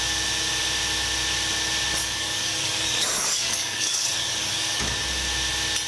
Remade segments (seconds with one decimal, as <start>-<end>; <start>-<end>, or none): 2.0-4.8